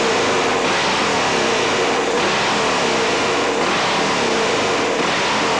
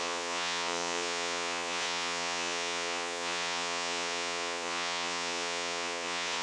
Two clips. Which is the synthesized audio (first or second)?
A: second